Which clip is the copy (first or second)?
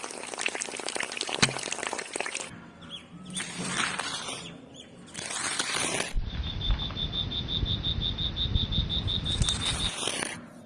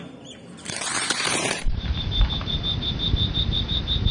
second